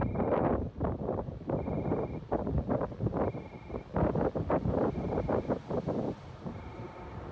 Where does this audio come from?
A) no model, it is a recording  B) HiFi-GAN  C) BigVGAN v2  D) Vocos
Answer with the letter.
A